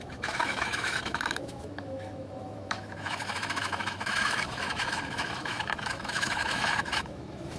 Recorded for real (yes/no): no